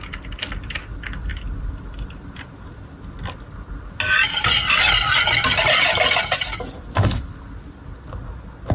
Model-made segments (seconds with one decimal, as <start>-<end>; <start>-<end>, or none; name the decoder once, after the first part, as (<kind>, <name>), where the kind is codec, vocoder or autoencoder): none